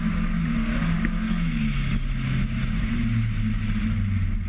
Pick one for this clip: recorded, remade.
recorded